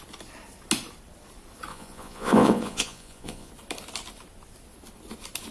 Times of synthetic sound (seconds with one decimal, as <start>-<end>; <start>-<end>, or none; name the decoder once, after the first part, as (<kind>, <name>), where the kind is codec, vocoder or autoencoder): 1.7-3.5 (vocoder, Vocos)